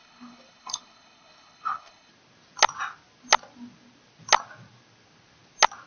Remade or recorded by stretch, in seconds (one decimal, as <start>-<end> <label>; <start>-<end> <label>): 0.0-2.1 remade; 2.1-5.9 recorded